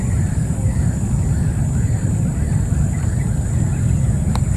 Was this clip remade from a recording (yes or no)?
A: no